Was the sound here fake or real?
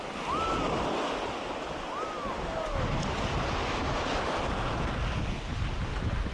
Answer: real